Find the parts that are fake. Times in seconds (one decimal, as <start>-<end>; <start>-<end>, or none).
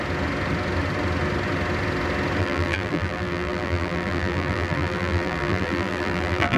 2.4-6.6